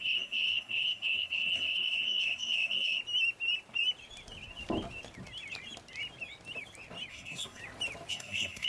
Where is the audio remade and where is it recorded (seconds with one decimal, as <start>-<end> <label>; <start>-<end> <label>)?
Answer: 0.0-3.0 remade; 3.0-7.1 recorded; 7.1-7.6 remade; 7.6-8.1 recorded; 8.1-8.7 remade